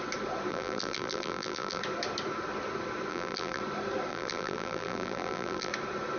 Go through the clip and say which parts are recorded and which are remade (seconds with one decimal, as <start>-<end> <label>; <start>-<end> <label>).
0.0-0.5 recorded; 0.5-1.8 remade; 1.8-3.1 recorded; 3.1-3.6 remade; 3.6-4.1 recorded; 4.1-5.7 remade; 5.7-6.2 recorded